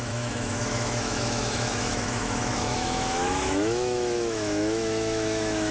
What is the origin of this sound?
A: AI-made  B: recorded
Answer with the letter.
A